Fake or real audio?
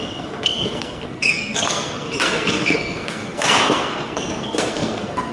fake